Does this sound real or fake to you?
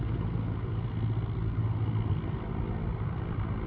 real